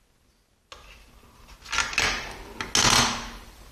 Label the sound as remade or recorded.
recorded